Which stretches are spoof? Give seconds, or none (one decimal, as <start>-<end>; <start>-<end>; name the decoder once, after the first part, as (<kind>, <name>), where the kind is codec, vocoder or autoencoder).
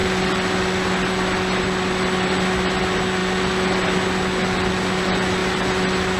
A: none